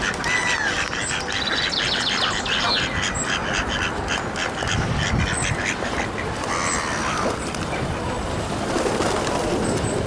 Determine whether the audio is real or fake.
real